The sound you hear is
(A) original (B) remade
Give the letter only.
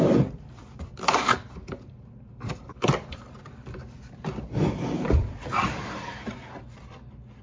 B